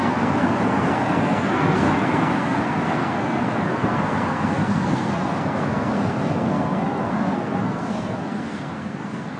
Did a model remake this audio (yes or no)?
yes